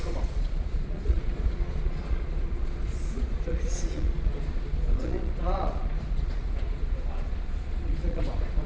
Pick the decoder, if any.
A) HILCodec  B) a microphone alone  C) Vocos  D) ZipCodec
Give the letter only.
C